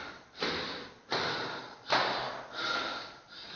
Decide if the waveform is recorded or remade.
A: recorded